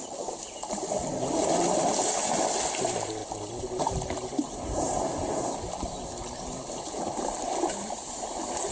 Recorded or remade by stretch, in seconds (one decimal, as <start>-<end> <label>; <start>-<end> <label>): 0.0-8.7 recorded